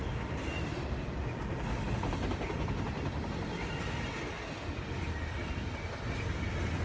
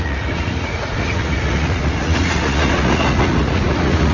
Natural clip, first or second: first